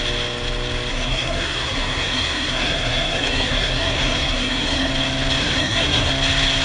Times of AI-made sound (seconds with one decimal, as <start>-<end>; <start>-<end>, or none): 0.9-4.9; 5.4-6.1